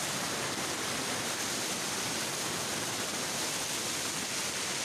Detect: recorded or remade remade